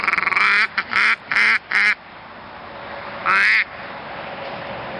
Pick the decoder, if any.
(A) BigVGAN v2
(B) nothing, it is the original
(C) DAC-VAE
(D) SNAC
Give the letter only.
B